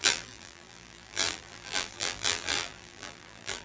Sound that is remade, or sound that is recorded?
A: remade